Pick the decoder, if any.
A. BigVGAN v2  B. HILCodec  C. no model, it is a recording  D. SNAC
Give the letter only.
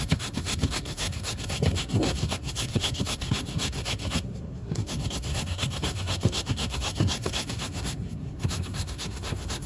D